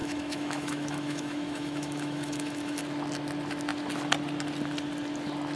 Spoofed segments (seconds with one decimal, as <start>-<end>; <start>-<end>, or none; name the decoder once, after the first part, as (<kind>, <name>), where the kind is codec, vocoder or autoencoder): 0.0-2.8 (autoencoder, DAC-VAE)